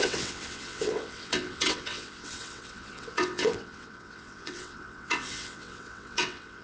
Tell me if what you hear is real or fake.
fake